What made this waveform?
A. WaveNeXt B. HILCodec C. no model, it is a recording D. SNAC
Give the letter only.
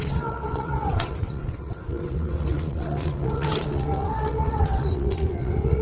A